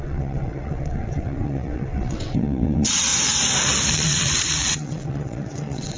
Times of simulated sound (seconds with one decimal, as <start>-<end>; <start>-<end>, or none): 0.0-3.1; 3.9-6.0